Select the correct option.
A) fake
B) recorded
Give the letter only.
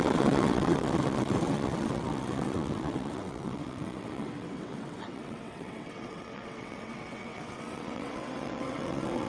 A